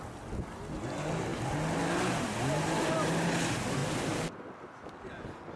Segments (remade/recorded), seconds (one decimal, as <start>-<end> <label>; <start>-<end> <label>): 0.0-5.6 recorded

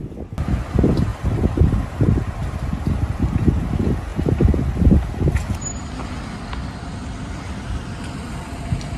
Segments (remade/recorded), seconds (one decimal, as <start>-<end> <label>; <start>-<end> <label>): 0.0-9.0 recorded

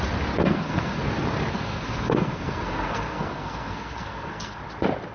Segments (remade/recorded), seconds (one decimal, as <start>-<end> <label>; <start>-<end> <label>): 0.0-0.4 recorded; 0.4-1.0 remade; 1.0-1.5 recorded; 1.5-4.6 remade; 4.6-5.1 recorded

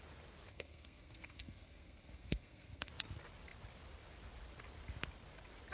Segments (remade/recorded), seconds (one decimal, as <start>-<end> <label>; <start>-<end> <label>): 0.0-0.5 recorded; 0.5-2.9 remade; 2.9-5.7 recorded

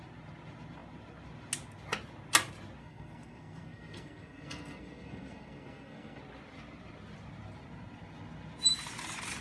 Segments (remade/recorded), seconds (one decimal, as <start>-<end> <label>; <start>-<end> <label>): 0.0-2.8 recorded; 2.8-6.2 remade; 6.2-9.4 recorded

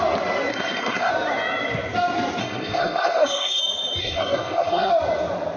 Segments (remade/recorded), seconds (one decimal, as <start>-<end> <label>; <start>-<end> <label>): 0.0-0.5 recorded; 0.5-1.1 remade; 1.1-2.4 recorded; 2.4-3.6 remade; 3.6-4.0 recorded; 4.0-4.9 remade; 4.9-5.6 recorded

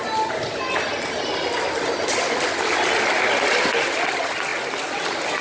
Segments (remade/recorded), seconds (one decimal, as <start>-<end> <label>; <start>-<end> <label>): 0.0-5.4 recorded